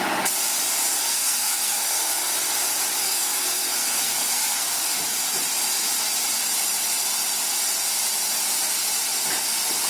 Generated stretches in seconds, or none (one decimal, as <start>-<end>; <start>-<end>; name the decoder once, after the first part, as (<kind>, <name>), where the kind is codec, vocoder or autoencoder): 1.0-2.3 (codec, SNAC); 3.0-5.0